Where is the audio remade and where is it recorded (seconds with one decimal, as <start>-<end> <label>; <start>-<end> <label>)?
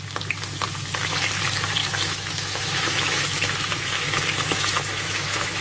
0.0-1.8 recorded; 1.8-5.6 remade